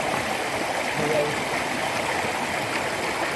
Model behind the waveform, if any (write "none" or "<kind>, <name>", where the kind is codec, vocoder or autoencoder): none